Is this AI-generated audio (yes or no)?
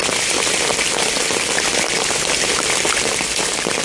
no